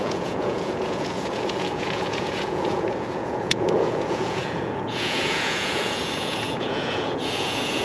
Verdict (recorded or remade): remade